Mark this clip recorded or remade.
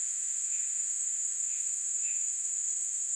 remade